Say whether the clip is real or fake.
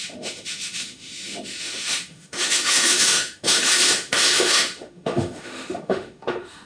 fake